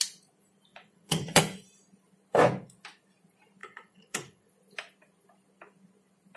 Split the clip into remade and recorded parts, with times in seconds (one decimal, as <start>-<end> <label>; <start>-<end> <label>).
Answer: 0.0-0.7 recorded; 0.7-1.4 remade; 1.4-3.6 recorded; 3.6-4.5 remade; 4.5-6.4 recorded

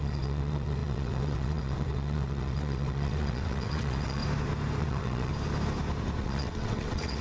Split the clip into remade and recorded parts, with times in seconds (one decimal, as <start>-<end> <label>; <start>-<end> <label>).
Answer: 0.0-4.2 remade; 4.2-4.8 recorded; 4.8-5.3 remade; 5.3-6.2 recorded; 6.2-7.2 remade